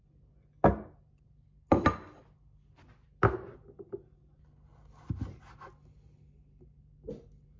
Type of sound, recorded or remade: recorded